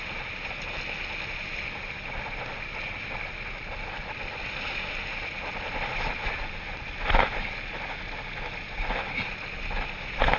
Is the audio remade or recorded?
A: recorded